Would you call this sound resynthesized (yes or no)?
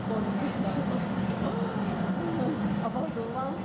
no